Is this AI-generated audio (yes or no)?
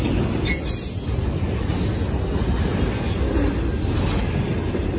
no